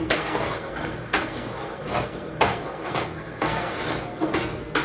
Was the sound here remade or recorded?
remade